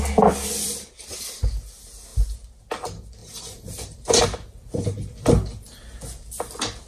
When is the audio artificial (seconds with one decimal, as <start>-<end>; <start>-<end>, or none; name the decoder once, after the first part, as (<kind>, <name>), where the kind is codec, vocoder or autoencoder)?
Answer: 2.1-2.6 (vocoder, BigVGAN v2); 3.2-4.2